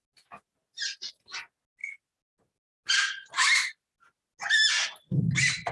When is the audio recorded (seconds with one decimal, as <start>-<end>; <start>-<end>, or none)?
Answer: 0.0-5.7